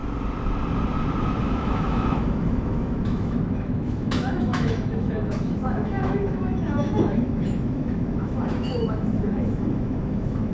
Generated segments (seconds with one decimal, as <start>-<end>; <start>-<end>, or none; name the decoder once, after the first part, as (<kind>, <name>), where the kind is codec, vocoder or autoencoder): 1.4-10.5 (autoencoder, DAC-VAE)

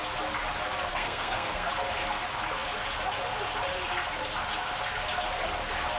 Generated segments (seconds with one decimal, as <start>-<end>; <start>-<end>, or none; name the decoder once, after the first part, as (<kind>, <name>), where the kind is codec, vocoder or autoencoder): 0.9-1.7 (codec, SNAC)

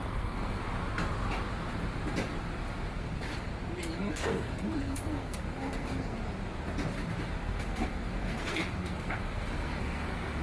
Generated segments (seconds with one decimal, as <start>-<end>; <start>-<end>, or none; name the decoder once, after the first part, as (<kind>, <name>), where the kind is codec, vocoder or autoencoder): 0.0-0.6 (codec, SNAC); 2.9-3.5; 4.1-6.2; 7.4-10.4

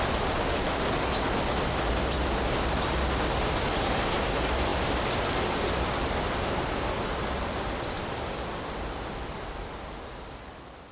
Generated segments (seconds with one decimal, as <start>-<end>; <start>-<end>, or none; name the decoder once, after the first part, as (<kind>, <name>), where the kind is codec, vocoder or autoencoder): none

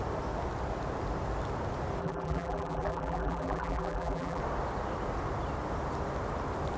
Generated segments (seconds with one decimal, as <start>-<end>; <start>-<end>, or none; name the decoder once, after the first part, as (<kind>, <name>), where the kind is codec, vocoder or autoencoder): 2.0-4.4 (vocoder, BigVGAN v2)